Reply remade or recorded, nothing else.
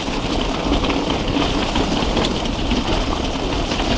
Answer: recorded